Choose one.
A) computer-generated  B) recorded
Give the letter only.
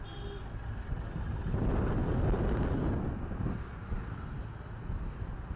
B